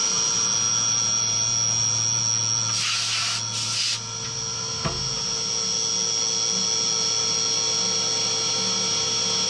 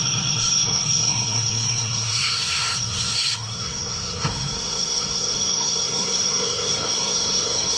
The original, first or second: first